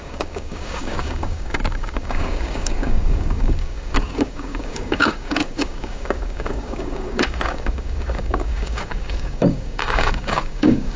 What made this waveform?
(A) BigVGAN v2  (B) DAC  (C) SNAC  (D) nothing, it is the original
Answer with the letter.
B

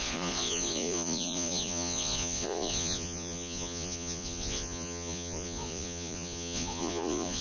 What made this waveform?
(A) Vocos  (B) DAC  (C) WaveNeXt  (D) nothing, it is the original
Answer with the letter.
A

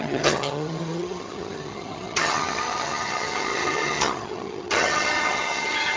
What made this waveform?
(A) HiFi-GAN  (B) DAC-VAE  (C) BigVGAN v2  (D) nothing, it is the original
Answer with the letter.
A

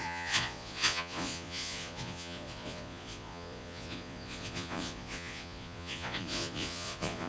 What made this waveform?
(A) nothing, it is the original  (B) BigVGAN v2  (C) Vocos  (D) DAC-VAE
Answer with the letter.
C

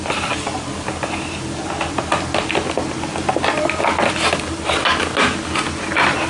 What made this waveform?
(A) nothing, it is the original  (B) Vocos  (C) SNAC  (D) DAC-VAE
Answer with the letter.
A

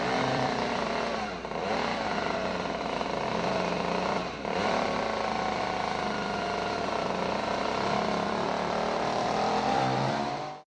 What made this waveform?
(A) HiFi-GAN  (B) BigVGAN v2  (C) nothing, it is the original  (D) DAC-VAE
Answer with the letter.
B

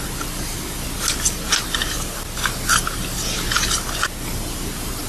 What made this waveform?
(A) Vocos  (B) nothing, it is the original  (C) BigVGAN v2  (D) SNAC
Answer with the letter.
B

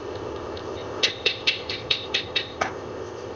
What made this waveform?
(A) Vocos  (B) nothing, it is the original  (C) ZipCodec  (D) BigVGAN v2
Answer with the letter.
C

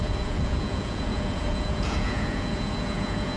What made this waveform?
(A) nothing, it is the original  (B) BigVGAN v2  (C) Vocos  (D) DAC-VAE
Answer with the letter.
C